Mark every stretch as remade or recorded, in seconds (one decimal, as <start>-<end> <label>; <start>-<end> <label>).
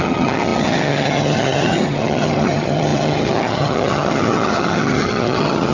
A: 0.0-5.7 remade